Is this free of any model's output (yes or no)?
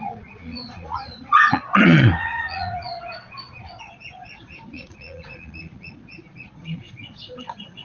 no